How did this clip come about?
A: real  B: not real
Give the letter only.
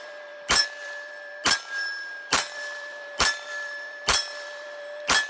B